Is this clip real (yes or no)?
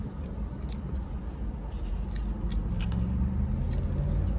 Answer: yes